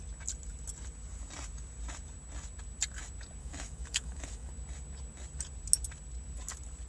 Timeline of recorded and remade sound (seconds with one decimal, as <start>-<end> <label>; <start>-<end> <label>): 0.0-3.4 recorded; 3.4-4.5 remade; 4.5-6.9 recorded